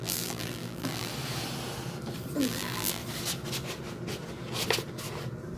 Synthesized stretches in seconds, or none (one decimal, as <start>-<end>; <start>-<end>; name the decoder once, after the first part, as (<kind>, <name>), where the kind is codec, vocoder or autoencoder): 0.0-1.1 (vocoder, BigVGAN v2); 2.4-3.0